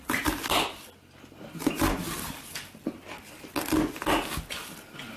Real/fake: real